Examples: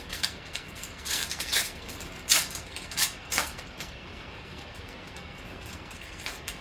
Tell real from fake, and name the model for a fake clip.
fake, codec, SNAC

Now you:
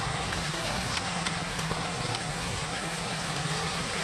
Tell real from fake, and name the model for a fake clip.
fake, codec, SNAC